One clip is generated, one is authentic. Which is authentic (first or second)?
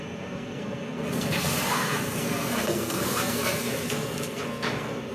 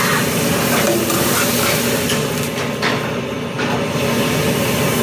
second